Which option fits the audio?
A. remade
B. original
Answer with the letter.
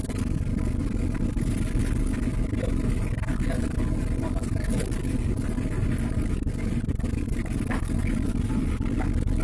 B